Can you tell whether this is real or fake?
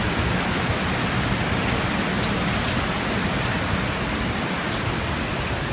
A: real